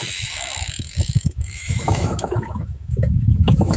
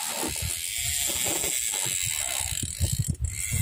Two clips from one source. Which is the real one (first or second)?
second